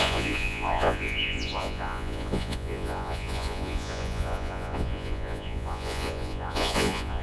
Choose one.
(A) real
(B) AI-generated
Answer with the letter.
B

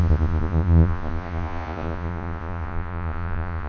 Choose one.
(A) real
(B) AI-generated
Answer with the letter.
B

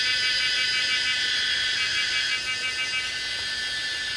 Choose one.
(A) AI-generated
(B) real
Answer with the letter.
B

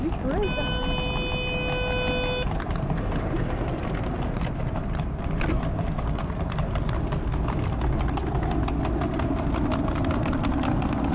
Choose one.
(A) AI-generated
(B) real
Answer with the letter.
B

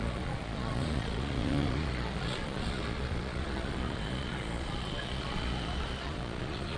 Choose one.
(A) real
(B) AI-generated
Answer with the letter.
B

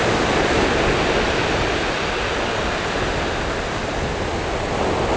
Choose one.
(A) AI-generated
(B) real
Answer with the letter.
B